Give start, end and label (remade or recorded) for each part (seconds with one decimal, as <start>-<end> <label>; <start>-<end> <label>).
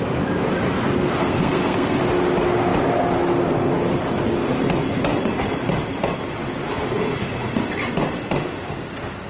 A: 0.0-1.2 recorded; 1.2-2.0 remade; 2.0-9.3 recorded